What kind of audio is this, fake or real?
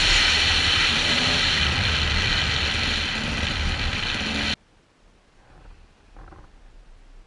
real